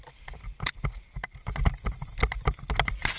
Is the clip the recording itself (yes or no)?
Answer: yes